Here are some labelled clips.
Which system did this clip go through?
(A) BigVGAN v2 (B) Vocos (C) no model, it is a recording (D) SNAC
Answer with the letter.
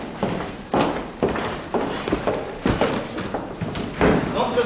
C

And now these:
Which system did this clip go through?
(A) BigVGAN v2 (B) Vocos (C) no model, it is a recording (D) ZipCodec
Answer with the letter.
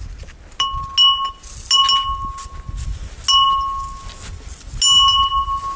C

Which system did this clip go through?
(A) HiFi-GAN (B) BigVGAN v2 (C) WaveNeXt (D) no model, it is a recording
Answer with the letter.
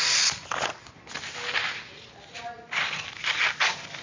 D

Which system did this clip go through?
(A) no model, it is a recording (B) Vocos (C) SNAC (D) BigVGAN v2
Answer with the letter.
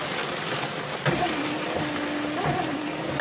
A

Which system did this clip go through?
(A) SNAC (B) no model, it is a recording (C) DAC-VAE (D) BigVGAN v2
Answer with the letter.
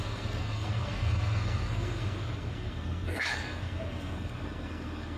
A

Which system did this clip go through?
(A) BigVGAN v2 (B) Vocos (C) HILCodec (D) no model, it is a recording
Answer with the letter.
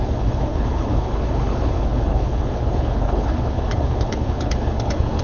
C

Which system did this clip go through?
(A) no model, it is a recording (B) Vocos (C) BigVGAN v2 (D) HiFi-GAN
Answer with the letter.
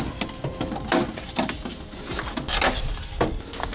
A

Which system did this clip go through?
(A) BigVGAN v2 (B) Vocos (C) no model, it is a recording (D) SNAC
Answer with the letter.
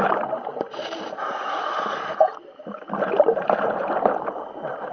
A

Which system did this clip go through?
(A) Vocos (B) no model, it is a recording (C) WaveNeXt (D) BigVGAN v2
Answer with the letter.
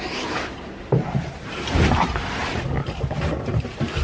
D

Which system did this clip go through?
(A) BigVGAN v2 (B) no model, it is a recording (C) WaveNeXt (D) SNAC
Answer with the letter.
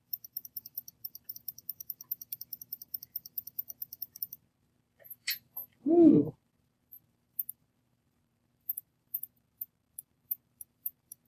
A